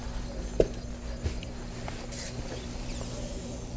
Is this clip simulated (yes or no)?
no